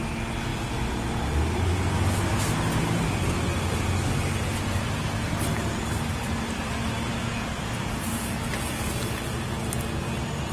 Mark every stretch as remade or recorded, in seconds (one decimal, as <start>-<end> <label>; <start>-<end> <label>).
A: 0.0-10.5 recorded